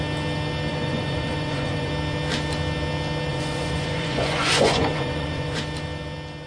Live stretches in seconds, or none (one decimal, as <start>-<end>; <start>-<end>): 0.0-0.7; 1.9-3.3; 5.6-6.5